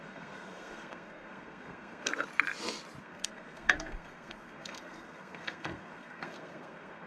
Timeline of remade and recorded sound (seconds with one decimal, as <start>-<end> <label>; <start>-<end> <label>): 0.0-2.1 remade; 2.1-3.0 recorded; 3.0-7.1 remade